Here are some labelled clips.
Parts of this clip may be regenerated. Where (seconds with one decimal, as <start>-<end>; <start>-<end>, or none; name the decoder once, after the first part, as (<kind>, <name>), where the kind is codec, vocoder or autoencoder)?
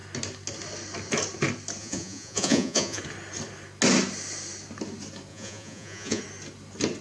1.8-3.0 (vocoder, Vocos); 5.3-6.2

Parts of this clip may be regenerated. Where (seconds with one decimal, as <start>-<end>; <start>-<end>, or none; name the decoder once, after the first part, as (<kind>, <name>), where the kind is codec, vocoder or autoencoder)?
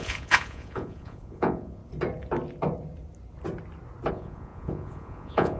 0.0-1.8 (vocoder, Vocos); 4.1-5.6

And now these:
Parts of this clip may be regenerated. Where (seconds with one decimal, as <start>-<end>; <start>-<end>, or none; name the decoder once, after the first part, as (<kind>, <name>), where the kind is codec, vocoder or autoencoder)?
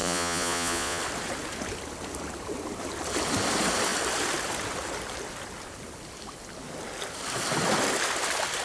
0.0-1.0 (vocoder, Vocos)